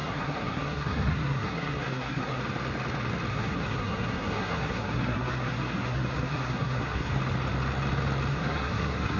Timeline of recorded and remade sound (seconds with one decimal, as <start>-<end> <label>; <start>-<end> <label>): 0.0-2.4 remade; 2.4-3.3 recorded; 3.3-7.1 remade; 7.1-8.3 recorded; 8.3-9.2 remade